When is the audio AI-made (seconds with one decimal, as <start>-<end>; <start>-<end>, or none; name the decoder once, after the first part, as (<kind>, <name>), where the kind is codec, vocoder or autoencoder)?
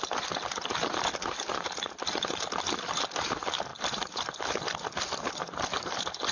none